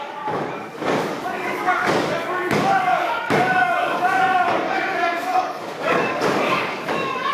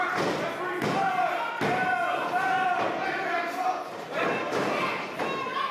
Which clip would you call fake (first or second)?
first